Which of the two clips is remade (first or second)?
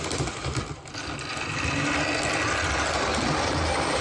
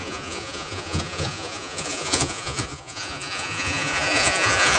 second